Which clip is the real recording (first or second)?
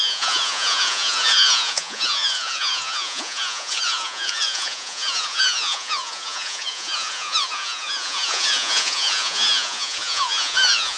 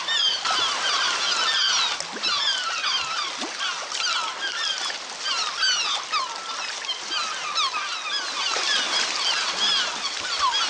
second